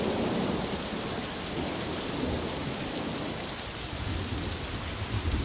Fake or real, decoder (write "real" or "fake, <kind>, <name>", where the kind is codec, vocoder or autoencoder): real